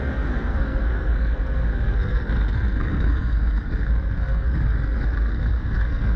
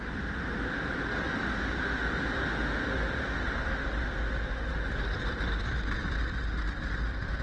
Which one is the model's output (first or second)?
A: first